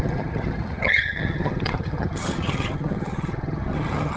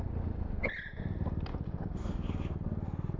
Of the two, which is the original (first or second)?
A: second